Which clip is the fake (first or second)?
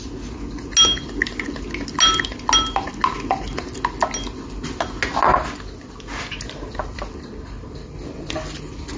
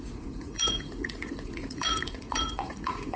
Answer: second